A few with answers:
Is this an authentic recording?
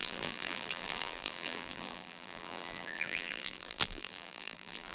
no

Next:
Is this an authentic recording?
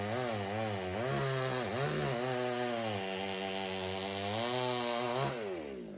yes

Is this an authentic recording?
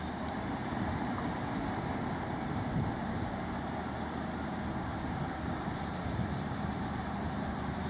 no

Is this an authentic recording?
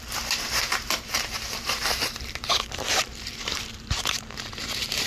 no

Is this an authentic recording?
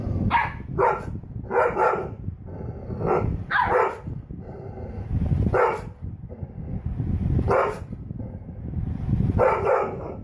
yes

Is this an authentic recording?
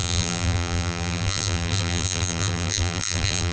no